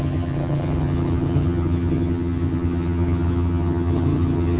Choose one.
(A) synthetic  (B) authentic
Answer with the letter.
A